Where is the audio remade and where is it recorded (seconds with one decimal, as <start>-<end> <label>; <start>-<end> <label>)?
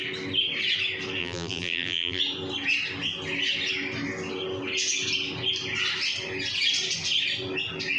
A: 0.0-1.2 recorded; 1.2-2.2 remade; 2.2-8.0 recorded